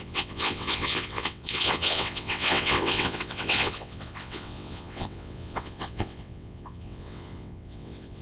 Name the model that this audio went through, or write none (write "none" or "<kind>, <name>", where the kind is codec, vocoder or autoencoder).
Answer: vocoder, WaveNeXt